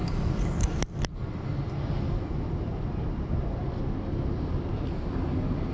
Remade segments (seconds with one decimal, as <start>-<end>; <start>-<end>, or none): none